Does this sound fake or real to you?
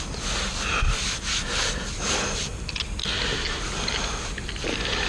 real